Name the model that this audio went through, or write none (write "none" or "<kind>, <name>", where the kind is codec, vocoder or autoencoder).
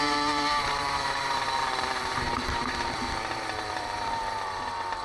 vocoder, BigVGAN v2